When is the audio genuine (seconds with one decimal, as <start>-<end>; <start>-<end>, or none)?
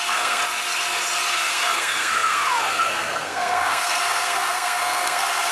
0.4-1.3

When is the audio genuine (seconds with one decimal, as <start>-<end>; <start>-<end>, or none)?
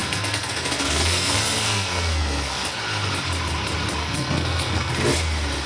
2.8-4.0; 4.9-5.7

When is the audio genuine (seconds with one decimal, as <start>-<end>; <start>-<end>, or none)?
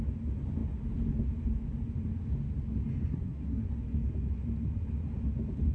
0.0-3.1; 3.7-5.7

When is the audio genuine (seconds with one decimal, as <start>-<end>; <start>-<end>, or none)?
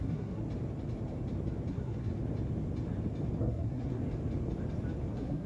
0.4-1.7; 2.1-3.4; 4.0-5.1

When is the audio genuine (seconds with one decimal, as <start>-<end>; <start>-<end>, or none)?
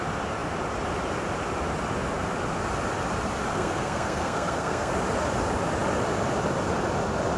0.0-3.5; 4.9-7.4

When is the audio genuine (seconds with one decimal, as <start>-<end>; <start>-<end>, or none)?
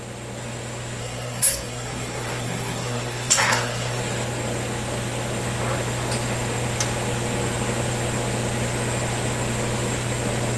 0.0-1.0; 4.0-10.6